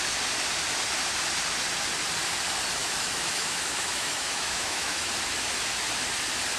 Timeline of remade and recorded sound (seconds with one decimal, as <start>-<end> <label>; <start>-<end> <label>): 0.0-2.8 recorded; 2.8-5.1 remade; 5.1-6.6 recorded